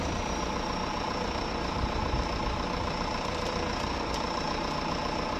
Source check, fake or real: fake